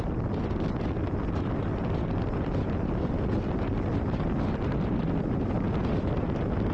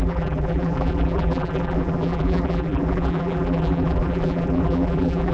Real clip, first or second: first